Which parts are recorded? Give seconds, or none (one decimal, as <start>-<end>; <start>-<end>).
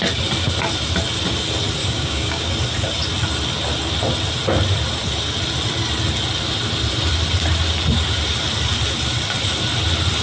0.0-1.8; 2.5-10.2